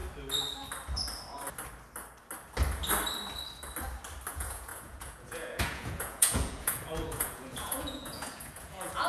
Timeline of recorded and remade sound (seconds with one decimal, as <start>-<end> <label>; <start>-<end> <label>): 0.0-4.3 recorded; 4.3-9.1 remade